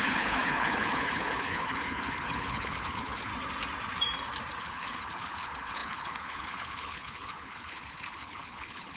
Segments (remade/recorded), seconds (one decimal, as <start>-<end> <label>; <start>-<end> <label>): 0.0-3.3 remade; 3.3-4.6 recorded; 4.6-9.0 remade